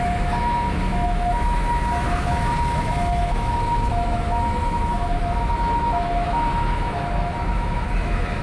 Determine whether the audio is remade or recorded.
remade